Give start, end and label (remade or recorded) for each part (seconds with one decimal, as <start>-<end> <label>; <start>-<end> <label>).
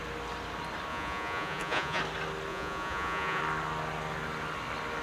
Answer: 0.0-0.9 recorded; 0.9-2.0 remade; 2.0-2.5 recorded; 2.5-3.4 remade; 3.4-5.0 recorded